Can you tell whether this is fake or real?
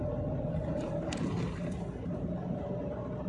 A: fake